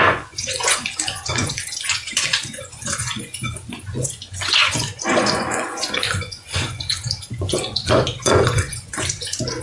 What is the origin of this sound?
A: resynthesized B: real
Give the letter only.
A